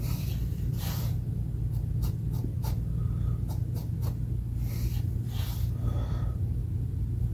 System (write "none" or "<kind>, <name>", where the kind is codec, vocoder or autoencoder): none